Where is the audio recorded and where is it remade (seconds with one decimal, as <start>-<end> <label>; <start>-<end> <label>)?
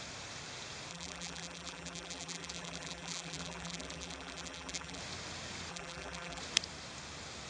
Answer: 0.0-0.9 recorded; 0.9-5.0 remade; 5.0-5.7 recorded; 5.7-6.4 remade; 6.4-7.5 recorded